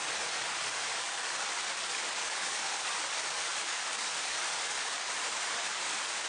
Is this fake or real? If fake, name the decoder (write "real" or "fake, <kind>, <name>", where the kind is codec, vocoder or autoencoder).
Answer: fake, codec, DAC